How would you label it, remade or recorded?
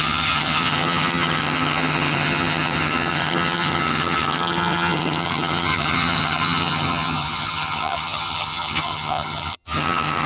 remade